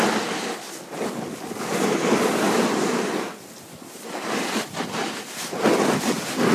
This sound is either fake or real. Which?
fake